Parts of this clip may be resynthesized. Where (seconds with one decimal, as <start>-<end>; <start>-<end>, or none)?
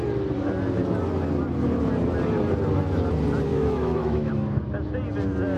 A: 3.5-4.3